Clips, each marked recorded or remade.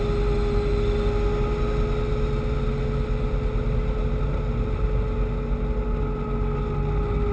recorded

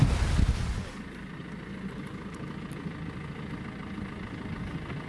recorded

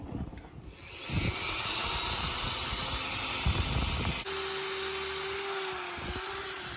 recorded